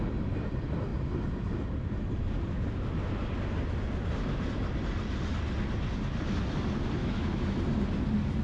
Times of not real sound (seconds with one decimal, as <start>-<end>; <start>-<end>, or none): 7.0-7.6

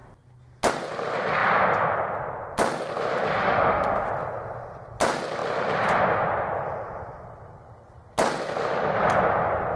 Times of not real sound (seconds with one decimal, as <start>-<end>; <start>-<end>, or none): 3.4-4.1

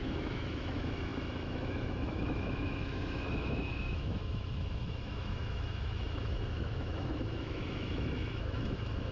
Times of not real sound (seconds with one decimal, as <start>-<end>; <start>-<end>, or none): 0.0-9.1

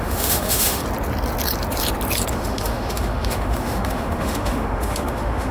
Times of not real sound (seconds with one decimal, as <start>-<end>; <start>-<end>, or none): 0.0-0.8; 2.3-5.5